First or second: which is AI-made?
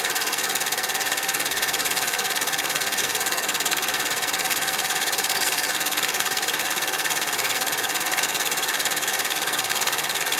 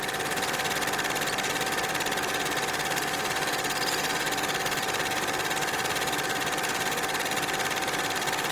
first